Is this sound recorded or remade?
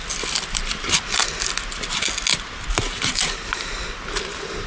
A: recorded